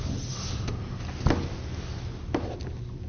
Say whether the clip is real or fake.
real